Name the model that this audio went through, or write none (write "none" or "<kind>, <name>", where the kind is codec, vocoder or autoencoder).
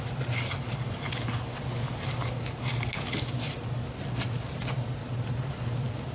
none